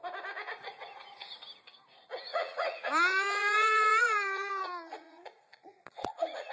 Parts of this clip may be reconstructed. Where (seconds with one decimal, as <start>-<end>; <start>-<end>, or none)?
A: 2.3-6.5